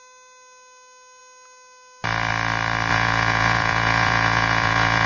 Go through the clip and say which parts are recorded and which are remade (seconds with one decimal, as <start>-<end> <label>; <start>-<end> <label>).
0.0-2.9 recorded; 2.9-5.1 remade

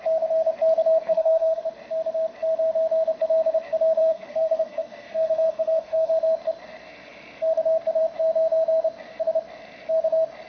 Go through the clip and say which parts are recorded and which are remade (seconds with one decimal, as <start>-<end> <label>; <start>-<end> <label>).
0.0-1.0 recorded; 1.0-1.6 remade; 1.6-4.0 recorded; 4.0-6.1 remade; 6.1-10.5 recorded

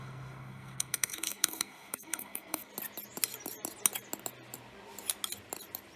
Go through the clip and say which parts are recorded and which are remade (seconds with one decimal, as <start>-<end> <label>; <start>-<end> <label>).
0.0-2.7 remade; 2.7-6.0 recorded

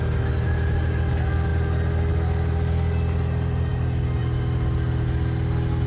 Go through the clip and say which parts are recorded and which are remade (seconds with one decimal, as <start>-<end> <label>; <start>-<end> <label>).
0.0-5.9 recorded

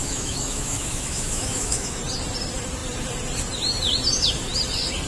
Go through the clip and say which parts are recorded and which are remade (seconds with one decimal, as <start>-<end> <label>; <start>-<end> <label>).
0.0-2.0 remade; 2.0-5.1 recorded

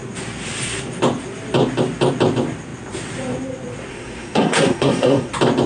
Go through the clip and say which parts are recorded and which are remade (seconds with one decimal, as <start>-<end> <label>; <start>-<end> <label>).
0.0-3.9 recorded; 3.9-5.3 remade; 5.3-5.7 recorded